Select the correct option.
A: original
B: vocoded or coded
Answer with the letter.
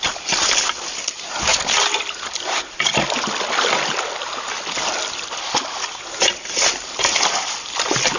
A